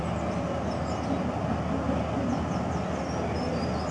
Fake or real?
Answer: real